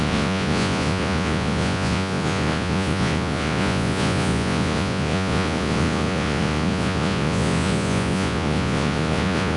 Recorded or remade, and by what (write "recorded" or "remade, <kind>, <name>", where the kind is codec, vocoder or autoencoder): remade, vocoder, Vocos